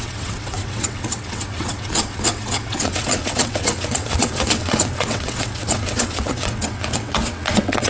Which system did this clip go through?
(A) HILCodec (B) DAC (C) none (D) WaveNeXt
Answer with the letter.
D